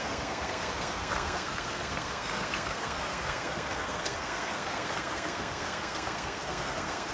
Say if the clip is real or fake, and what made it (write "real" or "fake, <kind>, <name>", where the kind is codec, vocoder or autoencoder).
fake, codec, SNAC